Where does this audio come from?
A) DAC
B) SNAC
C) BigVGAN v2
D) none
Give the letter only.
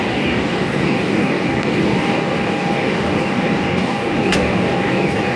A